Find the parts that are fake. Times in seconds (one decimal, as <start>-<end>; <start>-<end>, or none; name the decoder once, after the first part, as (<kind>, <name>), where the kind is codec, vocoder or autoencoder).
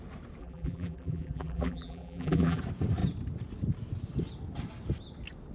0.4-2.6 (vocoder, BigVGAN v2)